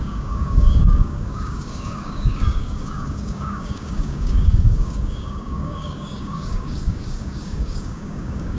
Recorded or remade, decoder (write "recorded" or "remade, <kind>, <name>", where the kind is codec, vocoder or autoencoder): remade, codec, DAC